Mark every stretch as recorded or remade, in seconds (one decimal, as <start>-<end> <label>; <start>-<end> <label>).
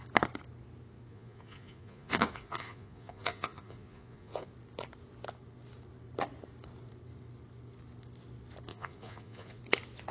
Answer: 0.0-1.1 recorded; 1.1-4.5 remade; 4.5-8.7 recorded; 8.7-9.6 remade; 9.6-10.1 recorded